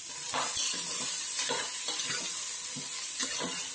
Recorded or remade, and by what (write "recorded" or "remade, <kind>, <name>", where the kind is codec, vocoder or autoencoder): recorded